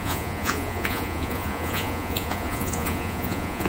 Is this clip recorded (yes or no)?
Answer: no